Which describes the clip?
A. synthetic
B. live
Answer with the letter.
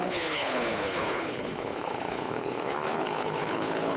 A